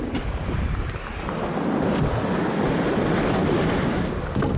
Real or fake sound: real